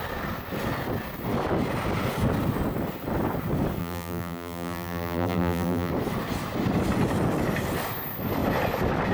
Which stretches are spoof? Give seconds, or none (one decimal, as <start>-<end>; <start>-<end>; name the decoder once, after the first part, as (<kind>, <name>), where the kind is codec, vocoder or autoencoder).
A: 3.8-5.9 (vocoder, BigVGAN v2)